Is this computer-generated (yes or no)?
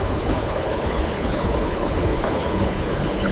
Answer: yes